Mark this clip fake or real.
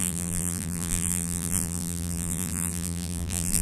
fake